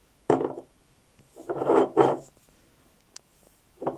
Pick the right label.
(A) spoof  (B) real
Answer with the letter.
A